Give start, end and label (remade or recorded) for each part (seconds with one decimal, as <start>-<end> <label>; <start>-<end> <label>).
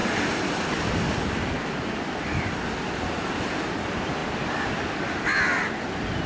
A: 0.0-6.3 recorded